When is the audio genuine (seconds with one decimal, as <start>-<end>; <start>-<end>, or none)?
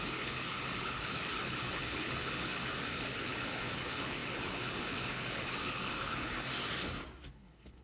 6.5-7.3